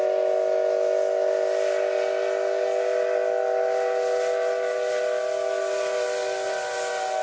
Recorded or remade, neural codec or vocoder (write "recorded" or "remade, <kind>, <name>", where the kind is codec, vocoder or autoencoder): recorded